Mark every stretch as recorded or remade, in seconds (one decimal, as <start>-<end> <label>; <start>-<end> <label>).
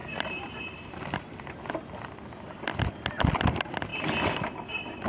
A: 0.0-1.6 remade; 1.6-5.1 recorded